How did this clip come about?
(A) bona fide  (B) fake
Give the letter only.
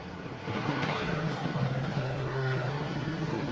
B